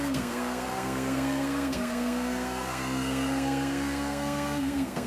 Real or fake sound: fake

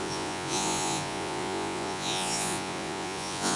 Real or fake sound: fake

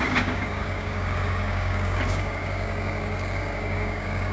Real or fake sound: fake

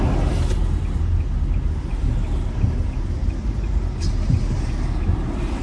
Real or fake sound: real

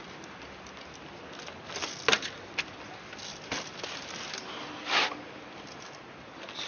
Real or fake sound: real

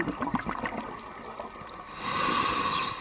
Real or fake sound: fake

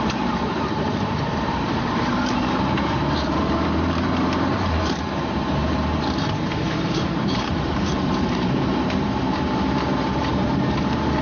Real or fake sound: fake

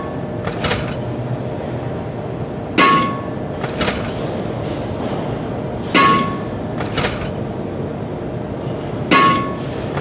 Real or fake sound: real